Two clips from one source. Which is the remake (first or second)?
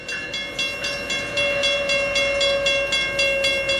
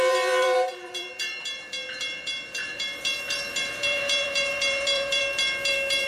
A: second